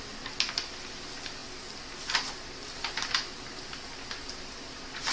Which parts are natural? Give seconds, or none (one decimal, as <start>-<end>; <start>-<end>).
0.0-5.1